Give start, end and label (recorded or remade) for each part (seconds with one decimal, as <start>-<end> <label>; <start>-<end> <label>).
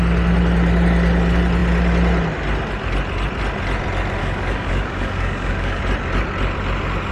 0.0-4.2 recorded; 4.2-5.8 remade; 5.8-7.1 recorded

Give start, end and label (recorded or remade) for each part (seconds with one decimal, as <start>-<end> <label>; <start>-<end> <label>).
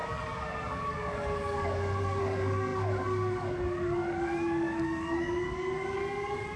0.0-6.6 remade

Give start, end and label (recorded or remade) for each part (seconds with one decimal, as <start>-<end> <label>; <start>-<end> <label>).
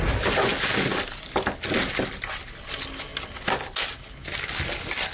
0.0-5.1 recorded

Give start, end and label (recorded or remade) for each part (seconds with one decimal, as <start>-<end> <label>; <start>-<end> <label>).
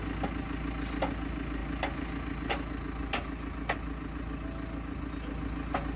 0.0-6.0 recorded